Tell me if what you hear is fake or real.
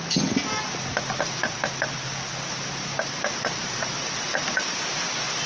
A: real